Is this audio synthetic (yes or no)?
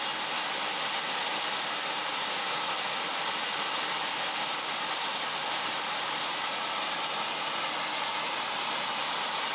no